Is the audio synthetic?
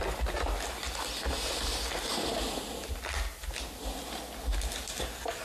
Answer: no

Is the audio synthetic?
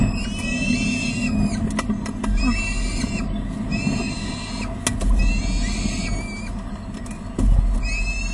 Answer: no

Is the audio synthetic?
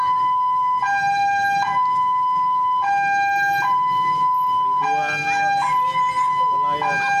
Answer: no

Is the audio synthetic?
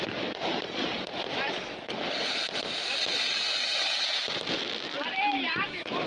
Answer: no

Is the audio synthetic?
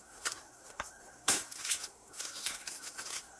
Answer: yes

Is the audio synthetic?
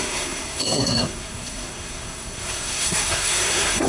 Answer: yes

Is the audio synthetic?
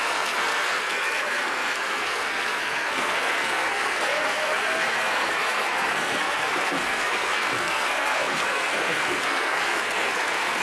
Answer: yes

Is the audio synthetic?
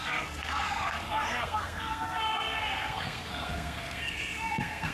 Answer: yes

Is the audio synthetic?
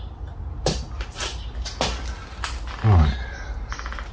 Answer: no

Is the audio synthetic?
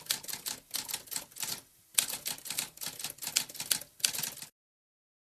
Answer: no